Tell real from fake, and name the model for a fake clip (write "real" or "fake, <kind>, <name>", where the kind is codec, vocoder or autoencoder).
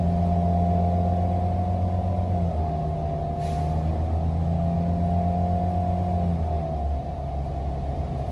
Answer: real